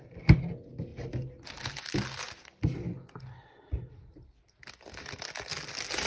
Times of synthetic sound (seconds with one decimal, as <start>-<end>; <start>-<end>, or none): none